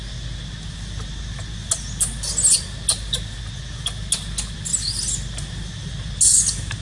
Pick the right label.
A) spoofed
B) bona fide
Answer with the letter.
B